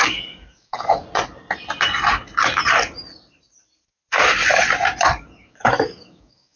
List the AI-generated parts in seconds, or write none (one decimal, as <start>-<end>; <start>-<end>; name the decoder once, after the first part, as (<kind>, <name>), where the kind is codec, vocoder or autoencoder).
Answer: 0.0-1.0 (codec, DAC); 5.0-6.6